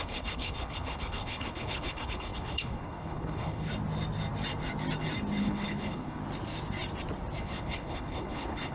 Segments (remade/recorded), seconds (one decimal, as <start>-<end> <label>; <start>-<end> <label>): 0.0-3.7 remade; 3.7-5.4 recorded; 5.4-6.2 remade; 6.2-7.4 recorded; 7.4-8.7 remade